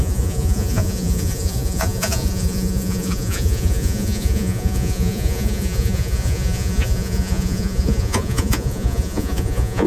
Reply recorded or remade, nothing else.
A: remade